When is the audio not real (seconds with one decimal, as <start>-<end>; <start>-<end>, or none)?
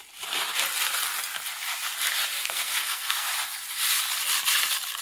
2.4-3.3